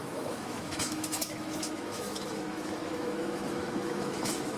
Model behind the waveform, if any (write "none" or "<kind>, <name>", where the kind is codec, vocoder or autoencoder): autoencoder, DAC-VAE